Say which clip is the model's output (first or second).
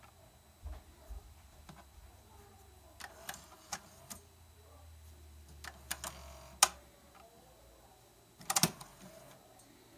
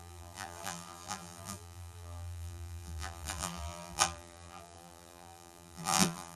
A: second